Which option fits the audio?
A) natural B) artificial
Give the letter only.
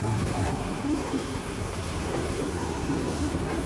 B